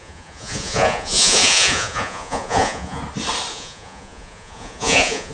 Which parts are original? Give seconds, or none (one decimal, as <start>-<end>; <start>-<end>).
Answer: 3.0-3.5